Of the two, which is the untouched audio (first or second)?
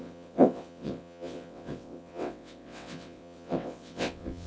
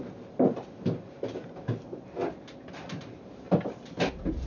second